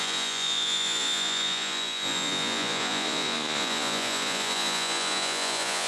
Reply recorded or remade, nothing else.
remade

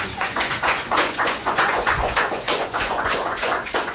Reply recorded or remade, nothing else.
remade